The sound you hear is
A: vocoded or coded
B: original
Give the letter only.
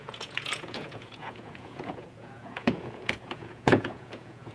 A